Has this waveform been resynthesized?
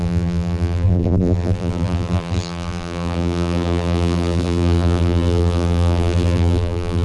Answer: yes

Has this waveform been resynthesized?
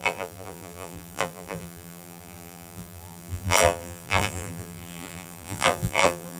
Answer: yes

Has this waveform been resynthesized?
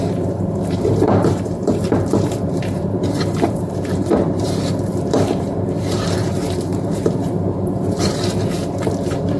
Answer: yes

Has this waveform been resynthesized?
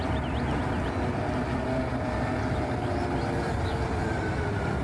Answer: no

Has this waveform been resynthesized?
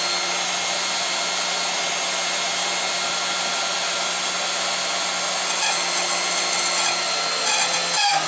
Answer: no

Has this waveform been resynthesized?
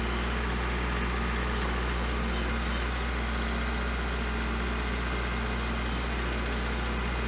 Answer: no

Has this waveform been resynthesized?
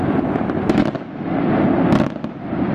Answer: no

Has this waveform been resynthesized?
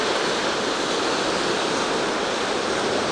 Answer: no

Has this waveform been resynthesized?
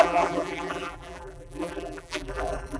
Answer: yes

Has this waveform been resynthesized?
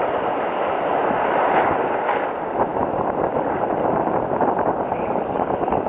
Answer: no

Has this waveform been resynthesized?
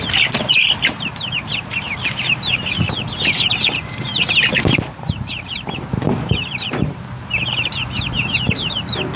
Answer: yes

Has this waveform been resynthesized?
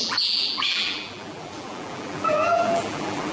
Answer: yes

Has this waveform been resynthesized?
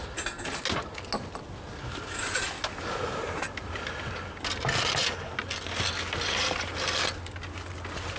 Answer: no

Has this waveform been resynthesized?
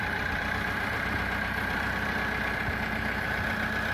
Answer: yes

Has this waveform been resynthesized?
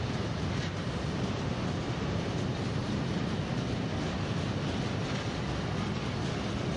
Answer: no